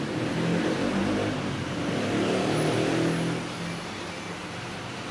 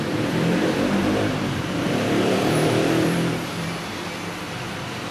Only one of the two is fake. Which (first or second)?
second